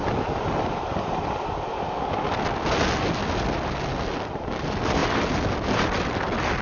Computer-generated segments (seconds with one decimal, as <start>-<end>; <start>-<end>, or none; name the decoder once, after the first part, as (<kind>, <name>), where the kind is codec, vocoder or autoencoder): none